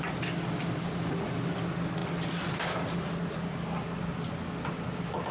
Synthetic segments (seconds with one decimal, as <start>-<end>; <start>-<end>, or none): none